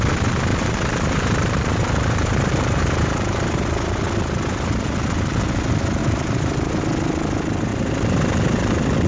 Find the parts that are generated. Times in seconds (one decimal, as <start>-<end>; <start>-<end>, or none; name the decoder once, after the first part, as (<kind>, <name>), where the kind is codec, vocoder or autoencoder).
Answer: 0.5-3.5 (vocoder, BigVGAN v2); 6.0-6.8; 7.7-8.2